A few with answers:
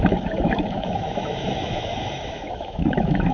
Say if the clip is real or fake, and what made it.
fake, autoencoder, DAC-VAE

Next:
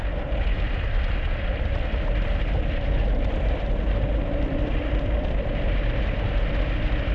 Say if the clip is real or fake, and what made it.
real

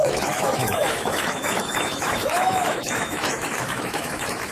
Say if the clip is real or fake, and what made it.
fake, autoencoder, DAC-VAE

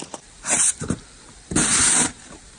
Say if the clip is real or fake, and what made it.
real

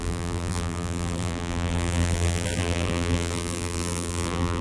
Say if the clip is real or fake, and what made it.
fake, vocoder, BigVGAN v2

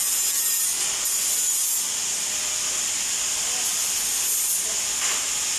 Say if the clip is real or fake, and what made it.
real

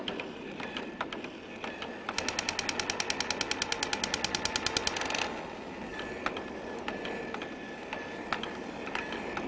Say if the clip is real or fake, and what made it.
real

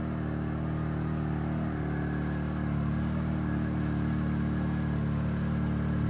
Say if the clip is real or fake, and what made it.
real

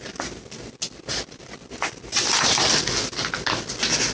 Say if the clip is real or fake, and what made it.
real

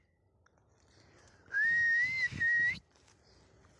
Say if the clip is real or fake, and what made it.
real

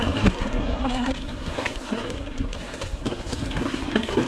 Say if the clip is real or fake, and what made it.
fake, codec, SNAC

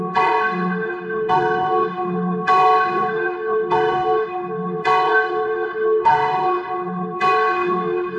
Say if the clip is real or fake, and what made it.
fake, autoencoder, DAC-VAE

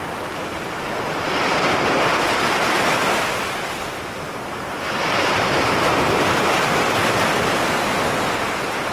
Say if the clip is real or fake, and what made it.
real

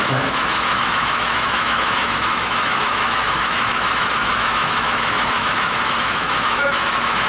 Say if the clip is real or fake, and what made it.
fake, autoencoder, DAC-VAE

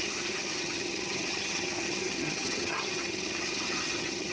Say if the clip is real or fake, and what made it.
fake, vocoder, HiFi-GAN